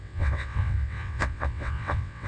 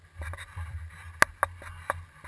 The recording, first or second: second